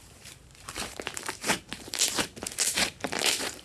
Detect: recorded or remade remade